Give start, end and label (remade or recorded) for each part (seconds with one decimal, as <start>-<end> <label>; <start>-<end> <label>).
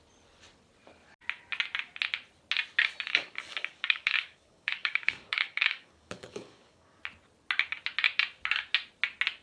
0.0-3.1 recorded; 3.1-7.0 remade; 7.0-9.4 recorded